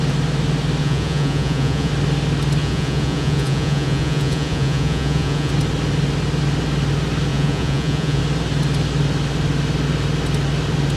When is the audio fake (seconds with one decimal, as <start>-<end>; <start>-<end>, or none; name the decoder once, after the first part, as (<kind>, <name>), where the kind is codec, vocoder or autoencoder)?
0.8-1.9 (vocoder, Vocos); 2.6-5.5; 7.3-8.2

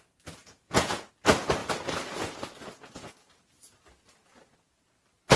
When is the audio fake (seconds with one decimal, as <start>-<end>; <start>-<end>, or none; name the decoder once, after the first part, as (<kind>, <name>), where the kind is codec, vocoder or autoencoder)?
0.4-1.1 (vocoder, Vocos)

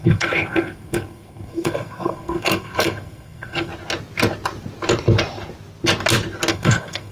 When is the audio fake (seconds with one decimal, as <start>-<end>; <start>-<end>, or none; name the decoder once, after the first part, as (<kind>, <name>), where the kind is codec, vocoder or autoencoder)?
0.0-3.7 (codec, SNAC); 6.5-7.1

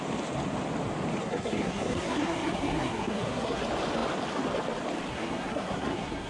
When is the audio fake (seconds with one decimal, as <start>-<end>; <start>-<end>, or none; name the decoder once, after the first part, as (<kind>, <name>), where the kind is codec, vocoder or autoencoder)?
1.2-3.6 (codec, SNAC); 5.1-6.3

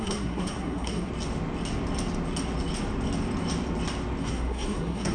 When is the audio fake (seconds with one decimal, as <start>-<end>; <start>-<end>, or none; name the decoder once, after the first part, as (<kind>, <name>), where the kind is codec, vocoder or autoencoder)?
0.0-1.1 (codec, SNAC); 4.2-5.1

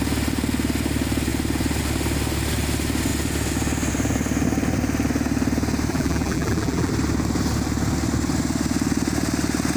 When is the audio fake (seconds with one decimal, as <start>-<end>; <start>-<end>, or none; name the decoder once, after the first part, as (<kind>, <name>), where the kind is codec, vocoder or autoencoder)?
5.9-6.9 (vocoder, BigVGAN v2)

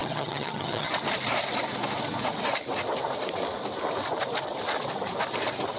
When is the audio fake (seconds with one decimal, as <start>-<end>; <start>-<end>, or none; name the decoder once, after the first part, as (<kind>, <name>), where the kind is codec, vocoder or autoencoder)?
0.0-0.9 (vocoder, HiFi-GAN)

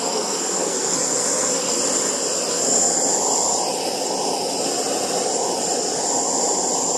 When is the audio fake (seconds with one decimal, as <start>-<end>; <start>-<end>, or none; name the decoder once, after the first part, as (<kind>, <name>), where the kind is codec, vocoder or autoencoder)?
0.0-1.8 (codec, SNAC); 2.5-2.9